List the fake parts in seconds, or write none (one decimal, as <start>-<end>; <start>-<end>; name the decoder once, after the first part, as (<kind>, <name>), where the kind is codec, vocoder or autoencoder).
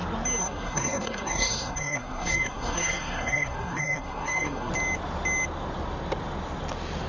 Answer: 0.4-4.7 (codec, SNAC)